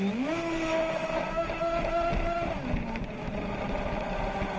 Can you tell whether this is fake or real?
real